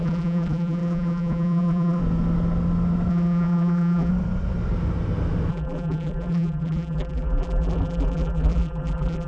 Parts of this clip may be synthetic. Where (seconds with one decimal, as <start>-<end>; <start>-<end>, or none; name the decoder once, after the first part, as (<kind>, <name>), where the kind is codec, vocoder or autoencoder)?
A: 0.0-2.0 (vocoder, BigVGAN v2); 3.1-4.1; 5.5-9.3